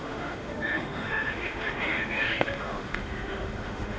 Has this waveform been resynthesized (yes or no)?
yes